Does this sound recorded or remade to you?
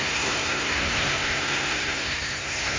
remade